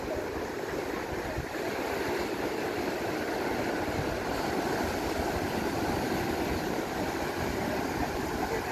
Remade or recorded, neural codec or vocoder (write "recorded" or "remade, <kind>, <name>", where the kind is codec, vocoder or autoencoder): recorded